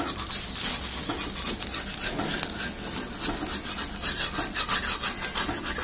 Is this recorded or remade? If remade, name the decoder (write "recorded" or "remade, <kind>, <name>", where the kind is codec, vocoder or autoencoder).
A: recorded